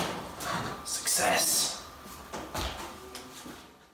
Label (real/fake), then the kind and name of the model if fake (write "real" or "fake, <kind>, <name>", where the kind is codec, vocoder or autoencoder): real